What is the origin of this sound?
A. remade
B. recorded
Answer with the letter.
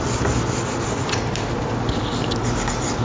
B